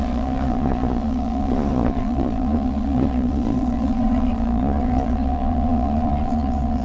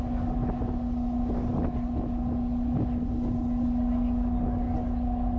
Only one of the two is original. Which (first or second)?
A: second